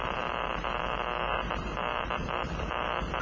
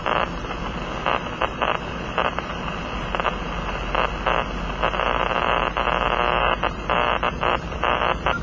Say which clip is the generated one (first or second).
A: first